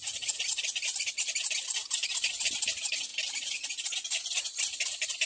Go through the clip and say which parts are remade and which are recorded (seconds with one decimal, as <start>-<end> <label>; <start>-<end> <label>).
0.0-5.3 recorded